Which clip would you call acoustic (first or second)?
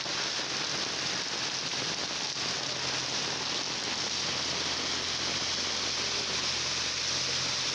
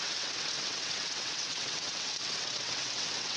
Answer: first